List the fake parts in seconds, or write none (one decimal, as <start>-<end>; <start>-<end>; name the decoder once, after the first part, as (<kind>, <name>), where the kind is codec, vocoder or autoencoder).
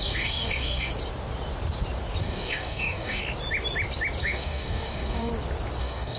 0.0-0.9 (codec, DAC); 2.2-3.2; 4.2-5.3; 5.8-6.2